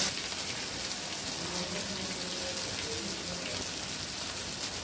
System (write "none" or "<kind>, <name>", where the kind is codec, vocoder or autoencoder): none